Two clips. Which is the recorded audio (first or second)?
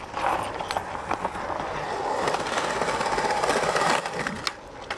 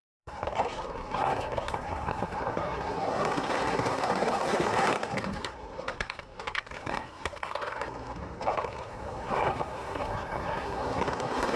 first